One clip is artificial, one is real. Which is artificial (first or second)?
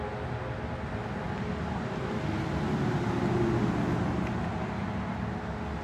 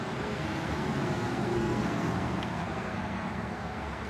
second